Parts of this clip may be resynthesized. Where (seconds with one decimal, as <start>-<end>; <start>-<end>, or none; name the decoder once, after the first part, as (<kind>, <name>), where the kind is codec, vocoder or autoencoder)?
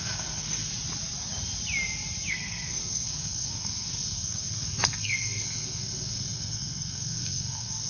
0.0-0.7 (codec, SNAC); 2.3-7.9